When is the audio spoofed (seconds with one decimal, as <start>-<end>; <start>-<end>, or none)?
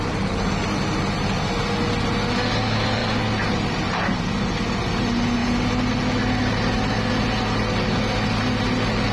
none